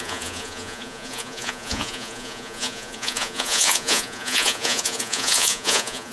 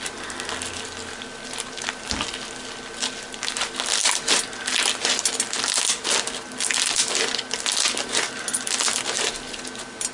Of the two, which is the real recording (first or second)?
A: second